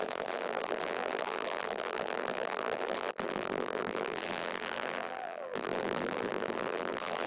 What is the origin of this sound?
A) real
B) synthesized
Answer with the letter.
B